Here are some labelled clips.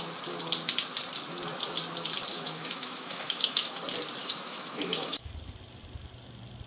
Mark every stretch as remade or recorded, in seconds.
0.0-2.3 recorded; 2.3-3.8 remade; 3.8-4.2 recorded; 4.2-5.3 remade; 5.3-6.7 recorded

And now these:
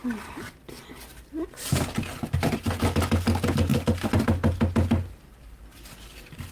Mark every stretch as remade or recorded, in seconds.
0.0-3.7 recorded; 3.7-4.2 remade; 4.2-6.5 recorded

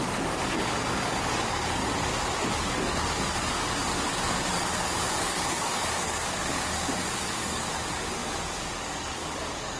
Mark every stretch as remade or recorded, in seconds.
0.0-1.8 remade; 1.8-2.5 recorded; 2.5-9.8 remade

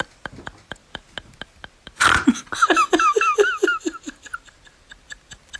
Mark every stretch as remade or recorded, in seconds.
0.0-5.6 recorded

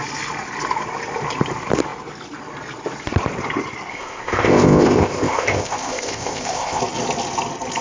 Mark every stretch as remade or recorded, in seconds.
0.0-3.9 recorded; 3.9-6.8 remade; 6.8-7.8 recorded

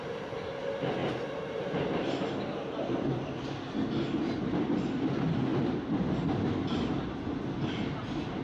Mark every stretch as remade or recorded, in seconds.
0.0-1.0 recorded; 1.0-2.1 remade; 2.1-8.4 recorded